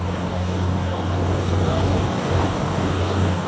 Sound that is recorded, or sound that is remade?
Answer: remade